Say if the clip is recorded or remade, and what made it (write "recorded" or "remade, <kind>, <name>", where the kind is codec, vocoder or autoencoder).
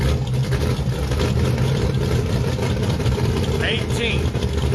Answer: remade, vocoder, BigVGAN v2